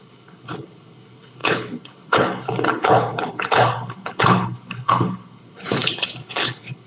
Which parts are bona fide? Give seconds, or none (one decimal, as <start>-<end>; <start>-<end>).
none